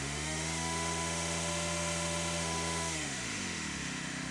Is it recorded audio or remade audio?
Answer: remade